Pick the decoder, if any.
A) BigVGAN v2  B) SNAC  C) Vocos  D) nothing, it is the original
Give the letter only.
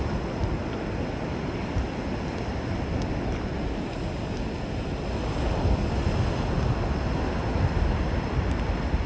D